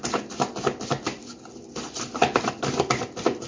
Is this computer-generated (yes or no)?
no